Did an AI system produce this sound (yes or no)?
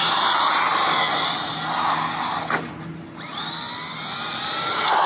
no